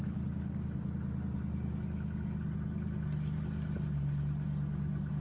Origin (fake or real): real